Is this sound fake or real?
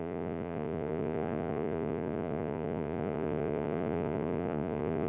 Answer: fake